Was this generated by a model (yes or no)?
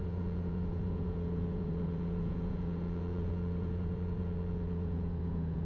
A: yes